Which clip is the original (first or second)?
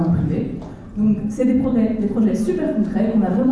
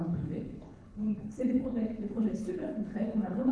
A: first